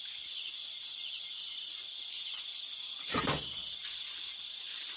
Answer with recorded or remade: recorded